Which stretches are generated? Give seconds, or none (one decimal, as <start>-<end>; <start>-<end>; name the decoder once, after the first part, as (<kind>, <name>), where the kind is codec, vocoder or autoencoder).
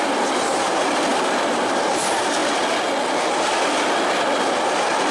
none